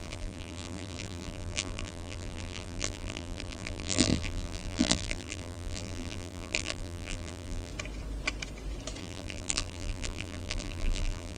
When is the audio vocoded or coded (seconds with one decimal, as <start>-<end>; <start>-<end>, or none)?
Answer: 0.0-7.7; 9.0-11.4

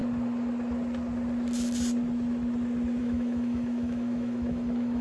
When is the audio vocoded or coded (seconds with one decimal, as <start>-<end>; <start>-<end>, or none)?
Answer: 3.0-5.0

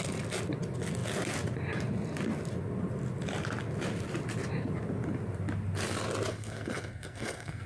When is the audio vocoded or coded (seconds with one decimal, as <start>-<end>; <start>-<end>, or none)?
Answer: 6.3-7.7

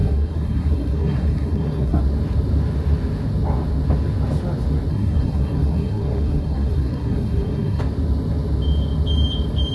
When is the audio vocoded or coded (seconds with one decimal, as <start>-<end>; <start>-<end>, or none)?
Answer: 0.0-2.0; 4.9-7.8

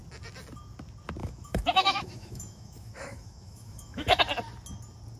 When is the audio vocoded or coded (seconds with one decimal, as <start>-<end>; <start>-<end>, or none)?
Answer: 1.2-4.2

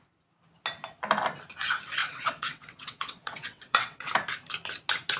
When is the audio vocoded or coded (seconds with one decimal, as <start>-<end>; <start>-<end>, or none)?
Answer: 2.0-4.1

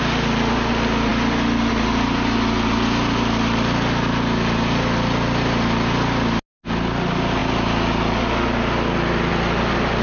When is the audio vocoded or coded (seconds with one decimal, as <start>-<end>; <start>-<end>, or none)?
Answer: none